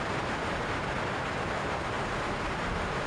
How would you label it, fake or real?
real